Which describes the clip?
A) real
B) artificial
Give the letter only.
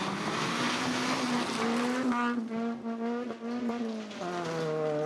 A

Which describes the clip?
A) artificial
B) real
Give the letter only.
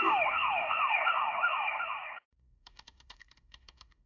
A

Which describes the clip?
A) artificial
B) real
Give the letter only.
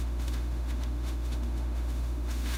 A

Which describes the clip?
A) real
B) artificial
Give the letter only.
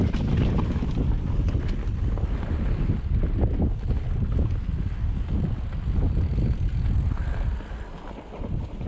A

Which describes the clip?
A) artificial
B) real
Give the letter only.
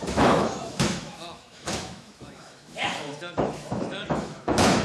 A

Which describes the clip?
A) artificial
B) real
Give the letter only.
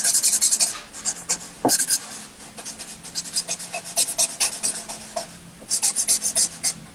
B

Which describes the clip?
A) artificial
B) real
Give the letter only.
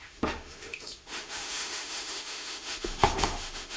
A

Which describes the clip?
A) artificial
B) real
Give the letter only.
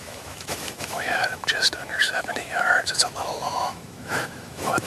A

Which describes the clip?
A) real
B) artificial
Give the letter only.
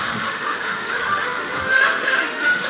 B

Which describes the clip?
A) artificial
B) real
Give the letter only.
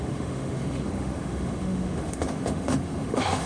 A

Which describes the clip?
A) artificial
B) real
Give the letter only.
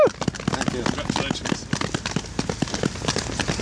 B